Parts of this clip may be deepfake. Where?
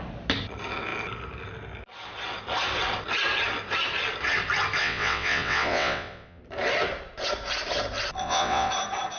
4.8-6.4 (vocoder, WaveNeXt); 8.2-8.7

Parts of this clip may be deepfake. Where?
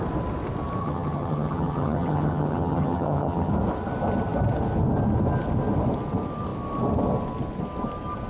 0.8-3.5 (vocoder, HiFi-GAN)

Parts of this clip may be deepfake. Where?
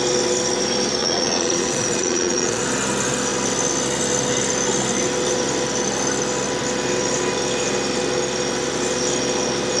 1.0-2.6 (vocoder, Vocos)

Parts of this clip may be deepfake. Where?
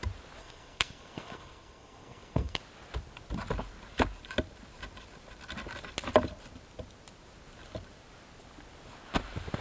0.4-2.6 (codec, SNAC)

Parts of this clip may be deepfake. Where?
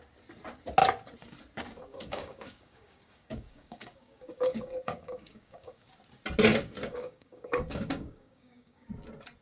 1.9-5.9 (codec, DAC); 6.5-8.9